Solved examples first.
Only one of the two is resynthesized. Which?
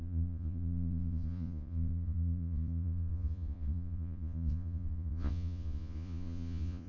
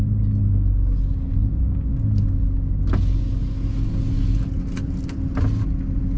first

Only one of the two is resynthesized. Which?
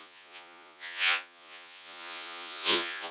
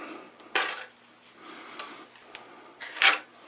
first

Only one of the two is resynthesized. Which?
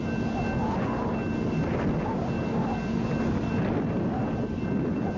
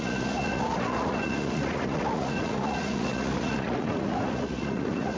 second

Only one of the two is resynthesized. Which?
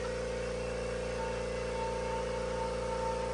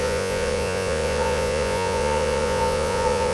second